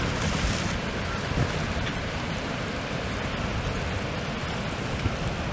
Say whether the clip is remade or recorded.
recorded